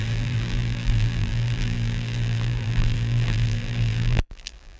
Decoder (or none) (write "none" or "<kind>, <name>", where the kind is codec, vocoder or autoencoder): vocoder, BigVGAN v2